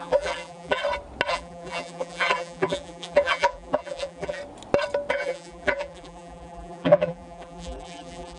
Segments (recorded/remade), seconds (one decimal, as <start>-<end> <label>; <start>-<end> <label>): 0.0-0.8 remade; 0.8-1.3 recorded; 1.3-4.4 remade; 4.4-5.1 recorded; 5.1-8.4 remade